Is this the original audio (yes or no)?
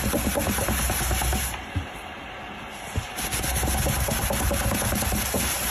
yes